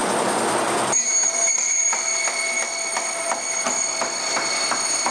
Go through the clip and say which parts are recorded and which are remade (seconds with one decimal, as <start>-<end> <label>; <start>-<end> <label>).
0.0-5.1 remade